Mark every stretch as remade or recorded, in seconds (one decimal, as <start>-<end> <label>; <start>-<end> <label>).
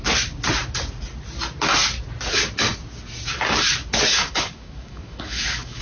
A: 0.0-4.1 recorded; 4.1-5.8 remade